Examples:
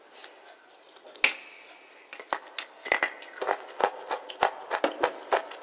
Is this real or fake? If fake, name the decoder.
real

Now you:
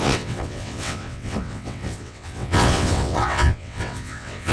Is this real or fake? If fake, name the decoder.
fake, vocoder, WaveNeXt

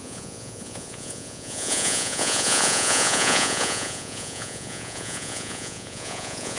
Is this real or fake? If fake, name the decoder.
fake, vocoder, Vocos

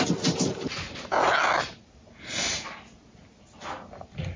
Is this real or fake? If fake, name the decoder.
real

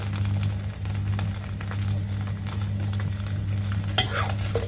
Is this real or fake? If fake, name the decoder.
real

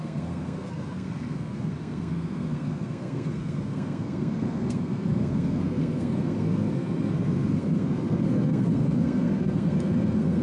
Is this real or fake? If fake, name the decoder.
fake, codec, SNAC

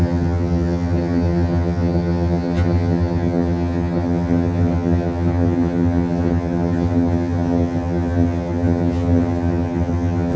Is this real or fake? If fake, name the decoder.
fake, vocoder, HiFi-GAN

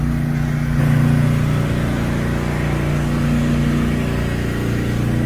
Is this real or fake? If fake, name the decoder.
real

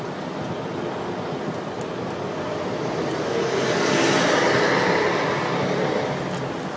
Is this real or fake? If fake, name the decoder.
real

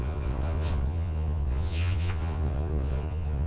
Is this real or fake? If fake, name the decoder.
fake, vocoder, Vocos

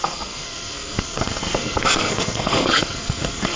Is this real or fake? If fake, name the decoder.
fake, codec, SNAC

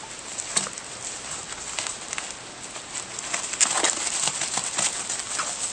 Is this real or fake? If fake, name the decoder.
real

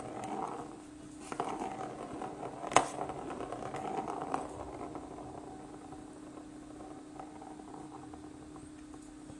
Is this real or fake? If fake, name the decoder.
real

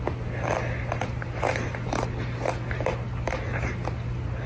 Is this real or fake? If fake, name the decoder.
real